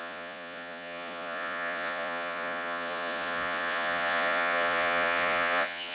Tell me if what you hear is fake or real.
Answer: fake